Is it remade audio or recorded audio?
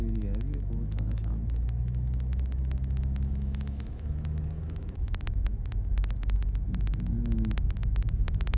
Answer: remade